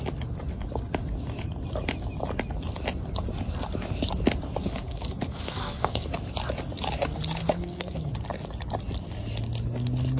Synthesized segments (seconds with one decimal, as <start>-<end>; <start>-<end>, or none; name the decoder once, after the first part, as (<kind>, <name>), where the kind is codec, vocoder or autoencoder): 4.6-6.1 (codec, SNAC); 7.4-8.1